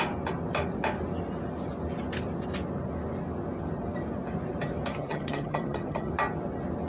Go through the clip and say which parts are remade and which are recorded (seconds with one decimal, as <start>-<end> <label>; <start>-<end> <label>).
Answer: 0.0-4.9 recorded; 4.9-6.1 remade; 6.1-6.9 recorded